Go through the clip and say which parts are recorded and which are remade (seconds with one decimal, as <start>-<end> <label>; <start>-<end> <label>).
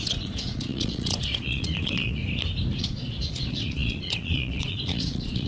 0.0-2.2 remade; 2.2-2.8 recorded; 2.8-5.5 remade